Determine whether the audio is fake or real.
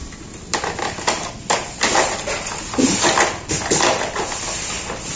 real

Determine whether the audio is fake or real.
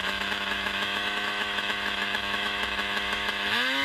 fake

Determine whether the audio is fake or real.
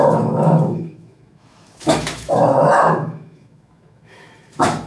fake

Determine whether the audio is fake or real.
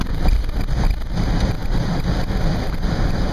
real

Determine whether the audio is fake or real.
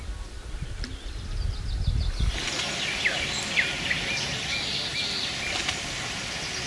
real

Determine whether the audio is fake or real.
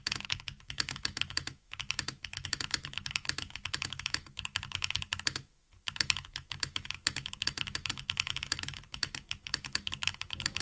fake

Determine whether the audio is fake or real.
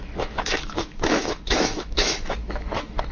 fake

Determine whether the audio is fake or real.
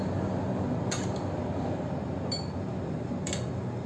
real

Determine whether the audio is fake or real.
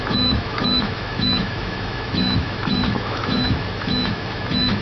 fake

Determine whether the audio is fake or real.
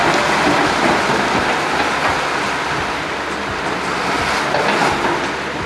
real